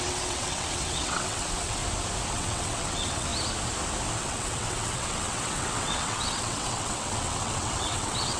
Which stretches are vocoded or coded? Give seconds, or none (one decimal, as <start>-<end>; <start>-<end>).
0.0-1.8; 2.3-3.3; 4.2-8.4